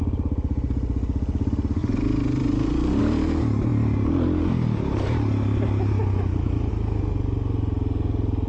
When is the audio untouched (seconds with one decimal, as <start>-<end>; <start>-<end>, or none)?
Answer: 0.0-1.8; 3.0-8.5

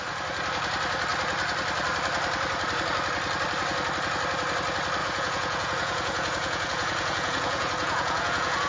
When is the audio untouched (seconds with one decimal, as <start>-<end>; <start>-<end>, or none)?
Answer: 0.0-5.0

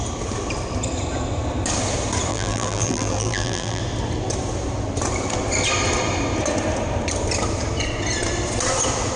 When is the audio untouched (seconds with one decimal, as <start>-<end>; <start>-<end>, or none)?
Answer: 0.0-2.3; 3.8-9.2

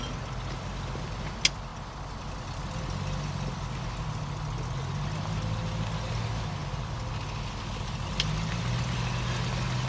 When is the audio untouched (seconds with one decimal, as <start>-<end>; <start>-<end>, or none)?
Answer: 0.0-9.9

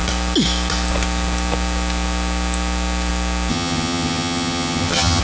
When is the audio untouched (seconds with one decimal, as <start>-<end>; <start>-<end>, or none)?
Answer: 0.0-3.5